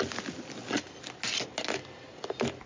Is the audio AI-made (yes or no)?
no